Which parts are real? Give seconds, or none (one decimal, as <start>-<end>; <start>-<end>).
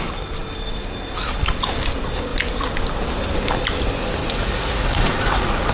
0.0-4.2